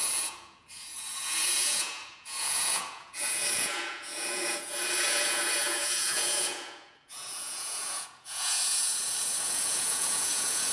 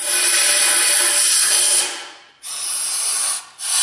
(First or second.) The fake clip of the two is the first